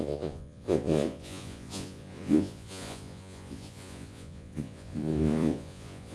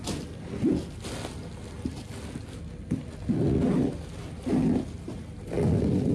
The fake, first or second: first